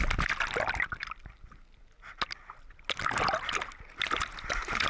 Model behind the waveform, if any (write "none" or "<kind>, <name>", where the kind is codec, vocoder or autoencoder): none